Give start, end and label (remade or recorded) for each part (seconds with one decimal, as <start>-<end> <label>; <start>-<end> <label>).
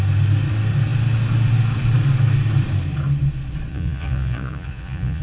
0.0-3.7 recorded; 3.7-5.2 remade